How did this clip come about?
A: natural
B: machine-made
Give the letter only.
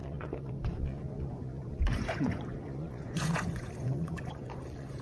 B